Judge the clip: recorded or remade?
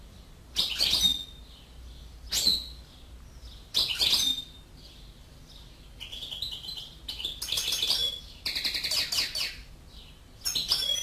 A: recorded